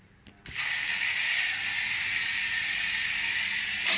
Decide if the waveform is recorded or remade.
recorded